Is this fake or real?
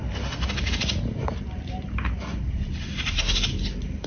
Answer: real